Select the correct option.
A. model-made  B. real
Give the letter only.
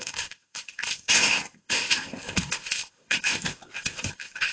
A